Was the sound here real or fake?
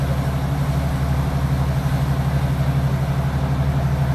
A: real